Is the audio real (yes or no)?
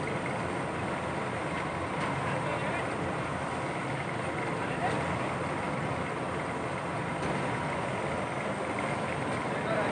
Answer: yes